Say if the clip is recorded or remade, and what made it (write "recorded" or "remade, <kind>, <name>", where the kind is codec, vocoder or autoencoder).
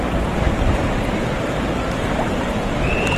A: recorded